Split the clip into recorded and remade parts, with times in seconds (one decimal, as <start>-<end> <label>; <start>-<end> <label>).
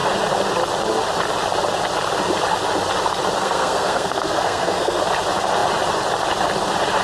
0.0-3.4 recorded; 3.4-5.0 remade; 5.0-7.0 recorded